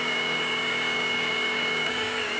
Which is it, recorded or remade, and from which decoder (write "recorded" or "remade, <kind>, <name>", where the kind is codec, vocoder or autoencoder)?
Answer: remade, codec, DAC